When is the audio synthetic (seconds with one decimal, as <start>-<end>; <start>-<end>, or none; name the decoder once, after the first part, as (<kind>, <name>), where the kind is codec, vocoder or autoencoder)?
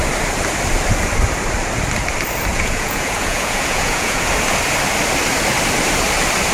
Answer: 2.5-4.3 (vocoder, Vocos)